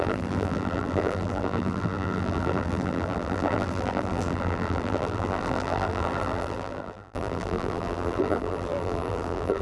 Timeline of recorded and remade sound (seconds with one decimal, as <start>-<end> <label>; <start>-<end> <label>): 0.0-9.6 remade